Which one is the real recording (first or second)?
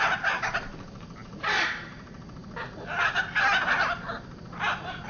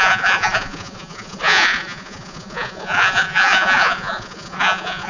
first